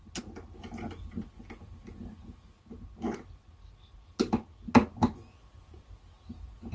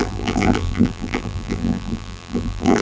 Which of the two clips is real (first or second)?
first